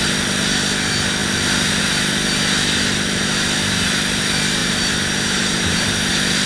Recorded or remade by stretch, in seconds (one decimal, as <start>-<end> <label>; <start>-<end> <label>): 0.0-4.6 recorded; 4.6-6.1 remade; 6.1-6.5 recorded